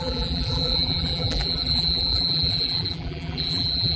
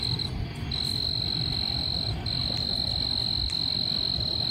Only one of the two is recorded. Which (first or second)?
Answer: second